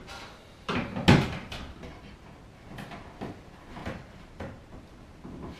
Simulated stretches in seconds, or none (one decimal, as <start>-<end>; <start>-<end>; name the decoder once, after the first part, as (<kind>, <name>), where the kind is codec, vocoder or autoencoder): 3.8-4.8 (vocoder, BigVGAN v2)